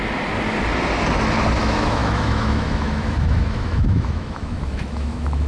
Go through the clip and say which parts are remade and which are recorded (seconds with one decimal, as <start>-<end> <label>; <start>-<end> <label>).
0.0-1.6 recorded; 1.6-5.5 remade